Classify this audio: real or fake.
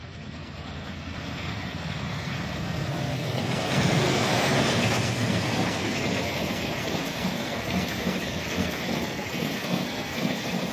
fake